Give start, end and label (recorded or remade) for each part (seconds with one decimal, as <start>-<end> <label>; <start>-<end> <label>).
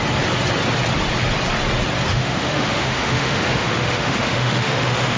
0.0-2.1 recorded; 2.1-5.2 remade